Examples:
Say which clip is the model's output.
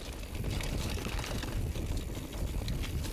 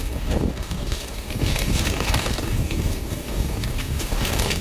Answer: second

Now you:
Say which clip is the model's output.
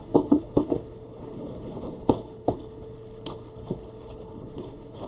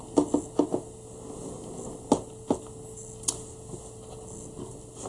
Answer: first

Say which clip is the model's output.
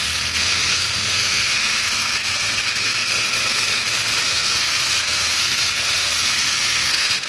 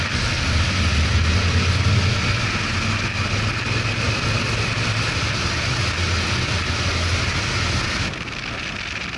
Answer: first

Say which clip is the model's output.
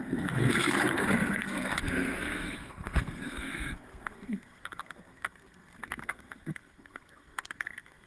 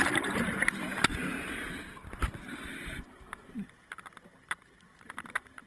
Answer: first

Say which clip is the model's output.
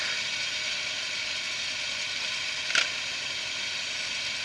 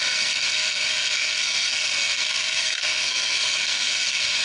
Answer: second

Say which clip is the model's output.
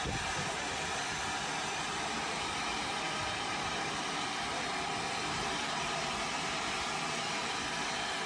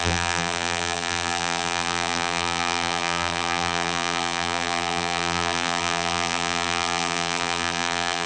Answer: second